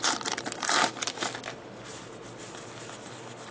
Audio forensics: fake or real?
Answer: real